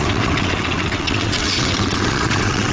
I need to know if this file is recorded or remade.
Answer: remade